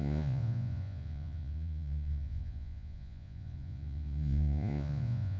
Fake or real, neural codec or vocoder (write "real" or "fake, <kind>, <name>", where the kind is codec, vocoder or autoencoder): fake, vocoder, Vocos